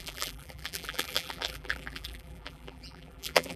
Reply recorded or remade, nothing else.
remade